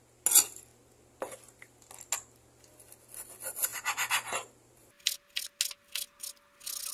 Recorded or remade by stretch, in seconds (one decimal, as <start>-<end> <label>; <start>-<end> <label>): 0.0-3.7 recorded; 3.7-4.9 remade; 4.9-6.9 recorded